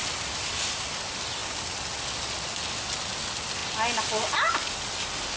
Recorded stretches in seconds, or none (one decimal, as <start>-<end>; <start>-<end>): 0.0-5.4